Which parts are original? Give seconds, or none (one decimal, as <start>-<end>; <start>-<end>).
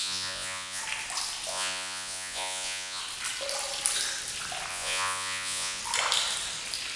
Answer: 0.8-1.5; 3.0-4.7; 5.8-7.0